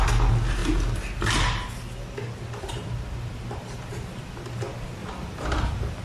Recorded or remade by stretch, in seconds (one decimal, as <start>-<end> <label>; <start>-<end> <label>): 0.0-5.0 recorded; 5.0-6.0 remade